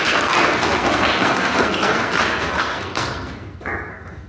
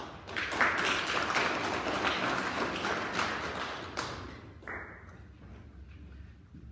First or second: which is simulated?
first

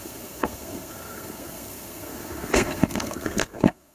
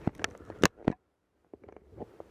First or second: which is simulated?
first